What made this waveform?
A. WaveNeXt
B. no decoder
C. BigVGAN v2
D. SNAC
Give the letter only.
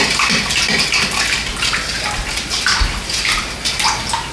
B